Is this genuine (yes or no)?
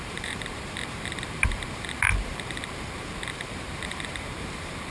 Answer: no